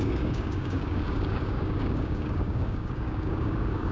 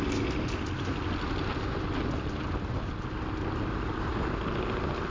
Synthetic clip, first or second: first